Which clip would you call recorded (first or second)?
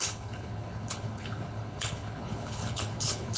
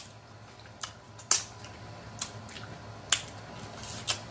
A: second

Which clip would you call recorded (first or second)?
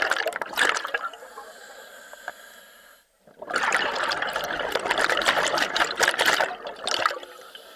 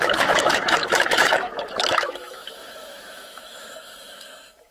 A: first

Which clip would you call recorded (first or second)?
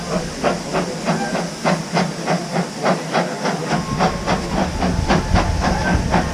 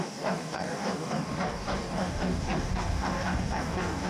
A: first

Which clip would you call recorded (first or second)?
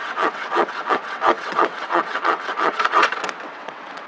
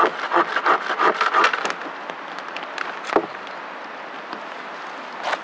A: second